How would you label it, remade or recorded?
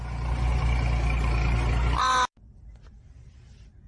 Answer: recorded